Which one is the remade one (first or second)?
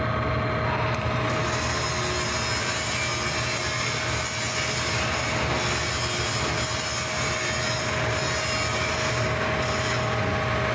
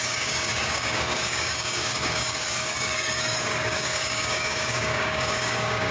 second